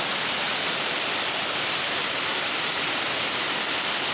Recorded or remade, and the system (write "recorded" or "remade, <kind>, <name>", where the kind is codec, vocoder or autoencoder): recorded